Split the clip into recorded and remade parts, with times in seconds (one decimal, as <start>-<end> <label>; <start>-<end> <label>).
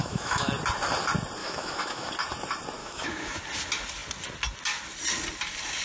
0.0-0.5 remade; 0.5-1.4 recorded; 1.4-2.1 remade; 2.1-2.8 recorded; 2.8-3.4 remade; 3.4-5.8 recorded